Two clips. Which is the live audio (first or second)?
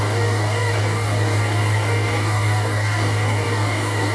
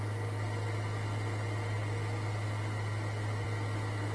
second